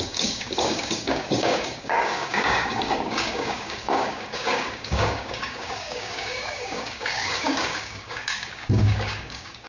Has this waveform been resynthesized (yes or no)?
yes